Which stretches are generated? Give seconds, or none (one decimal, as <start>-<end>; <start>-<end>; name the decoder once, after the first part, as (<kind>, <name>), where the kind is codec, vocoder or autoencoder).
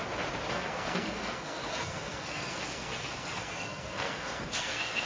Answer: 0.5-5.1 (codec, SNAC)